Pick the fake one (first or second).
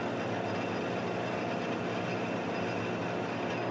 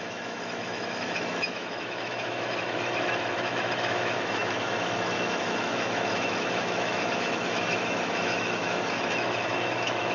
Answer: second